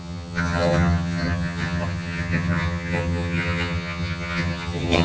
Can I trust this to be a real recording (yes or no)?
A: no